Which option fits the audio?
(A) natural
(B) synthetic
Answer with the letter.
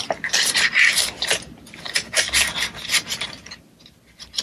A